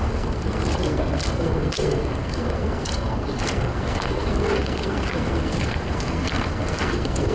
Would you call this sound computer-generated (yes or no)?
yes